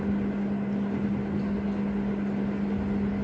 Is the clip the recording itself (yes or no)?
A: yes